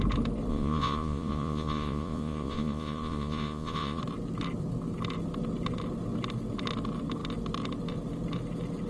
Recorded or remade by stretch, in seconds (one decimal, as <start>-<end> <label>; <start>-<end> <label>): 0.0-0.5 recorded; 0.5-4.0 remade; 4.0-8.9 recorded